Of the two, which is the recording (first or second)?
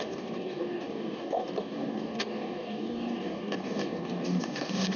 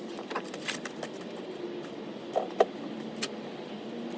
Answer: second